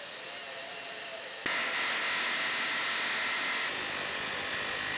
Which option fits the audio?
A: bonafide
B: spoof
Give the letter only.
A